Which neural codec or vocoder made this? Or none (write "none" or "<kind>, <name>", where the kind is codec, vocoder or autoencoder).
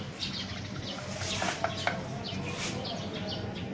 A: none